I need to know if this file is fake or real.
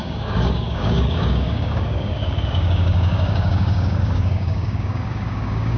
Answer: fake